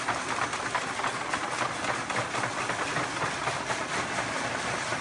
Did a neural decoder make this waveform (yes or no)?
yes